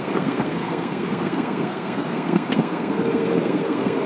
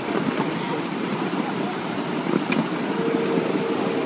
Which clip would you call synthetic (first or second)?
first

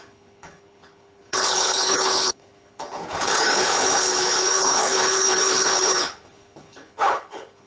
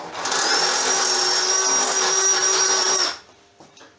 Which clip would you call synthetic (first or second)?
first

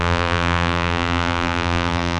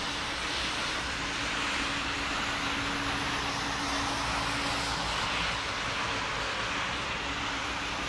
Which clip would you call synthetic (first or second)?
first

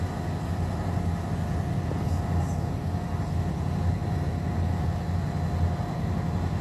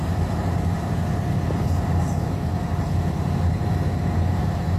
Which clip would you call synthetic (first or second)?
second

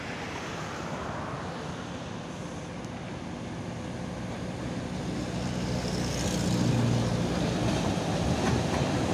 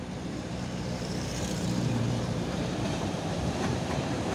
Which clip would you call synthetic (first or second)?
second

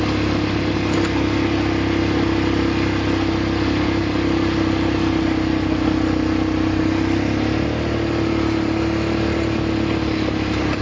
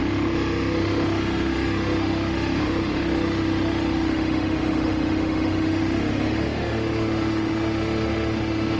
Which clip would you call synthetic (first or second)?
second